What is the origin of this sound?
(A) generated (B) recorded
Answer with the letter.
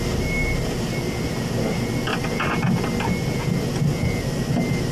B